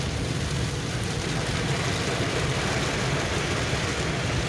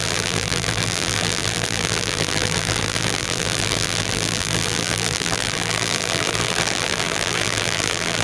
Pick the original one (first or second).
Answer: first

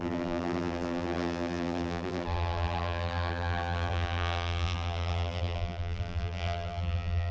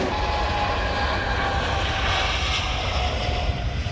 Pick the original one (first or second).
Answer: second